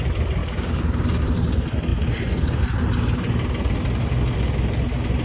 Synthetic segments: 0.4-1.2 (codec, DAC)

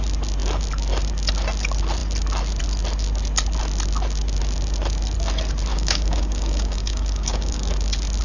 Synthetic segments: 5.7-7.7 (codec, DAC)

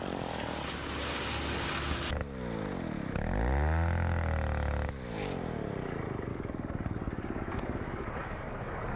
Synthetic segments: 6.3-9.0 (codec, DAC)

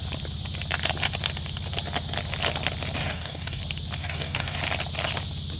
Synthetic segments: 3.0-3.6 (codec, DAC); 4.0-4.6

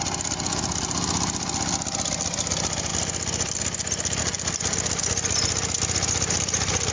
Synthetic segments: none

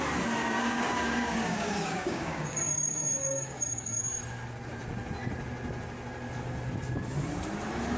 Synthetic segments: 0.4-4.0 (codec, DAC)

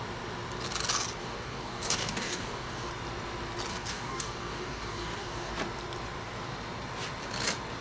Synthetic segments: 1.2-2.9 (codec, DAC); 3.7-5.5